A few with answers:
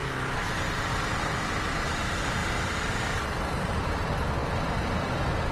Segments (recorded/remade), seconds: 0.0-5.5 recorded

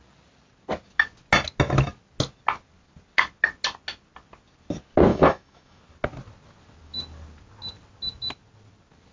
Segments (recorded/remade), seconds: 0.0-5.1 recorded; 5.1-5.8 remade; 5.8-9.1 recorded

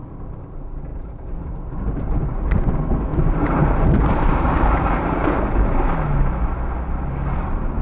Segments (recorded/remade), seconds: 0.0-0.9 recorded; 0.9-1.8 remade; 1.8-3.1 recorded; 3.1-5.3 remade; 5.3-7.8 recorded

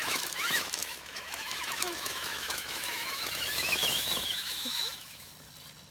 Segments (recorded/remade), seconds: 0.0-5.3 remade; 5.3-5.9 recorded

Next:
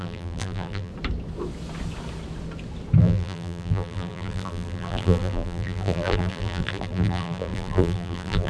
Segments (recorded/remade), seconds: 0.0-0.9 remade; 0.9-3.0 recorded; 3.0-8.5 remade

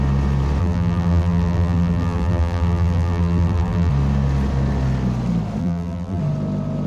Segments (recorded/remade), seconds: 0.0-0.6 recorded; 0.6-3.9 remade; 3.9-5.6 recorded; 5.6-6.2 remade; 6.2-6.9 recorded